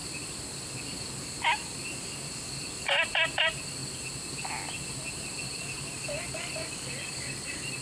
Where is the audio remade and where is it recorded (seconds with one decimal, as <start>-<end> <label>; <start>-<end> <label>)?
0.0-7.8 recorded